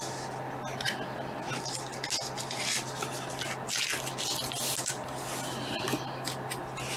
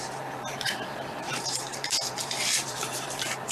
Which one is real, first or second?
first